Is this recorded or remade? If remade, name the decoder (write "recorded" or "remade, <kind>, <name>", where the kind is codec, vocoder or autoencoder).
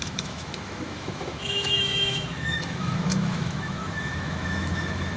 remade, autoencoder, DAC-VAE